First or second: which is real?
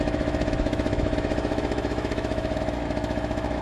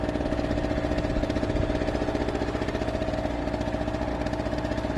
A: second